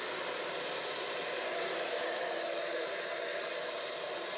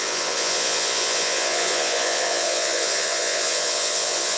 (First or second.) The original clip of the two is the first